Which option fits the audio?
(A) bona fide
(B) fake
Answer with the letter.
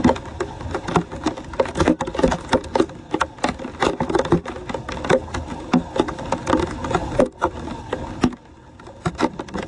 A